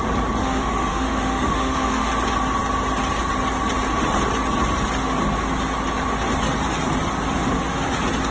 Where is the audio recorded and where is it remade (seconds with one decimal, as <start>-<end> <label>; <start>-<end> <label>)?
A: 0.0-0.4 recorded; 0.4-2.1 remade; 2.1-8.3 recorded